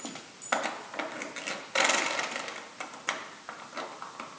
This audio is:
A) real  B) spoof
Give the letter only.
A